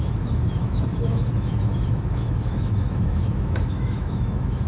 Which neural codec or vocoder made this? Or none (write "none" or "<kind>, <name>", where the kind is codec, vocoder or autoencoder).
autoencoder, DAC-VAE